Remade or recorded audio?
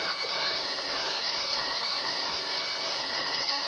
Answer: remade